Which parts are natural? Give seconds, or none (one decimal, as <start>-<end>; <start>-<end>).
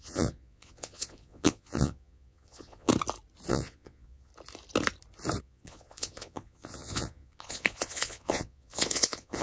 2.9-3.5; 4.3-5.4